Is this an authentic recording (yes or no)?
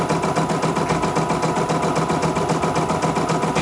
yes